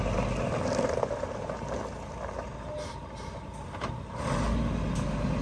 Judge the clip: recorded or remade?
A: recorded